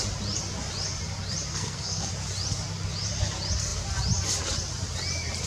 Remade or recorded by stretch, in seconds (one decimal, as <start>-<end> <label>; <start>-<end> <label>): 0.0-1.5 recorded; 1.5-2.1 remade; 2.1-5.5 recorded